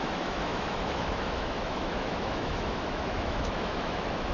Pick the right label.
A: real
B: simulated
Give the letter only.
B